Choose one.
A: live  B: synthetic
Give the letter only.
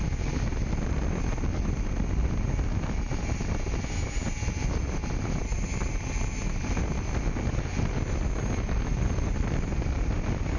A